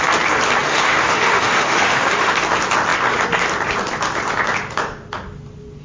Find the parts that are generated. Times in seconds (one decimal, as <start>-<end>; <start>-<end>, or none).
0.7-2.3